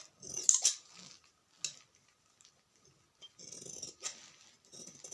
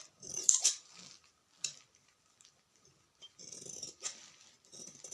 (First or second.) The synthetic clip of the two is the second